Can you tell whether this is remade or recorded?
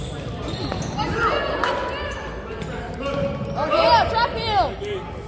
recorded